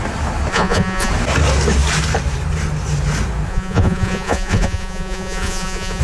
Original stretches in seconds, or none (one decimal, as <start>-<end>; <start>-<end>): 0.0-0.5; 1.1-3.5